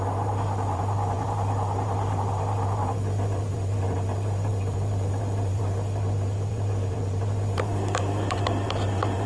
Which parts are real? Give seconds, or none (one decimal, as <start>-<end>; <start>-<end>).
none